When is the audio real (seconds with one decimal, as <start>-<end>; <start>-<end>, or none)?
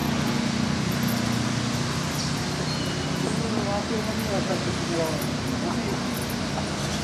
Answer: 0.0-5.9; 6.5-7.0